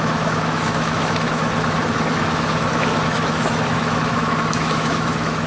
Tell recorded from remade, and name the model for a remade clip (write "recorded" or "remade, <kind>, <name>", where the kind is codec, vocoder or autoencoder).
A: remade, autoencoder, DAC-VAE